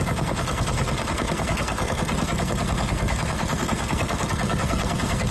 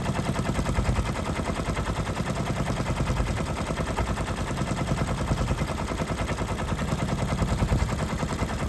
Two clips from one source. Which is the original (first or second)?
second